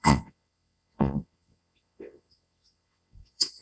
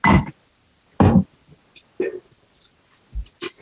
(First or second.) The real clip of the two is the second